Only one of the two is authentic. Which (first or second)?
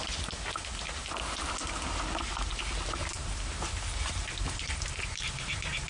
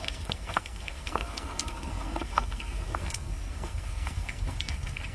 first